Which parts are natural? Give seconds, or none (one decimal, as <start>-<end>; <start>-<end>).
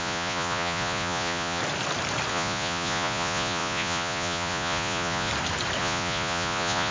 1.6-2.3; 5.3-5.8